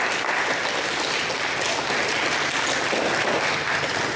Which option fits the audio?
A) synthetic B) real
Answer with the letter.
B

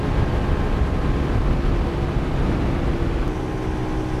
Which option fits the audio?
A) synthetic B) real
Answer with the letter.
B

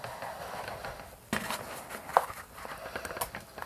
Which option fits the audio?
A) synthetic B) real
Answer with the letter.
B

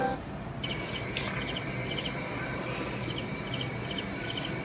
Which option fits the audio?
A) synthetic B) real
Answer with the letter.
B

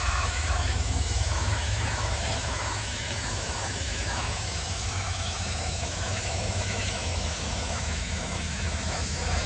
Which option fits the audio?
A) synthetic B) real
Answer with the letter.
A